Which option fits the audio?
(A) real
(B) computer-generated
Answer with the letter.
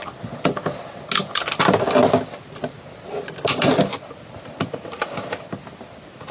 A